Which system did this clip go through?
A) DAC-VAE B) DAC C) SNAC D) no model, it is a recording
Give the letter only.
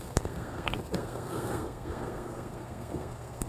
C